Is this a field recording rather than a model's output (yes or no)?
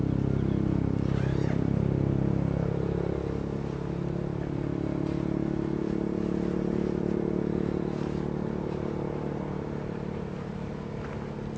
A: yes